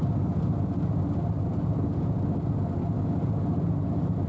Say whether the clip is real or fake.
real